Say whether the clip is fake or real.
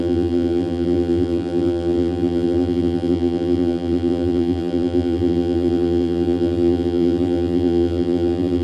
fake